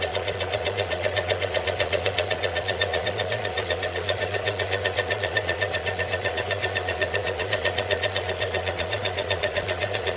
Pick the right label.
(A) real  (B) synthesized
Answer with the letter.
B